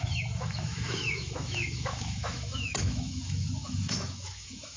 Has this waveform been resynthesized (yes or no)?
yes